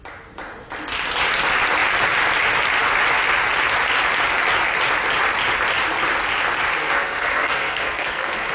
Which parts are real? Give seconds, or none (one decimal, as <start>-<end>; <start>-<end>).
0.0-6.8